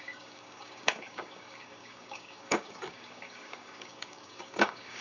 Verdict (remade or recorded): remade